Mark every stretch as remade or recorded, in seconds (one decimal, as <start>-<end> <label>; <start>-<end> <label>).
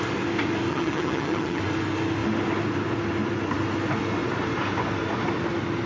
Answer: 0.0-0.7 recorded; 0.7-1.6 remade; 1.6-5.9 recorded